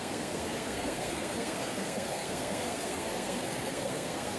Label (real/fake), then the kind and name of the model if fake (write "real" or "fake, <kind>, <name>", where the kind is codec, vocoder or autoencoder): fake, codec, SNAC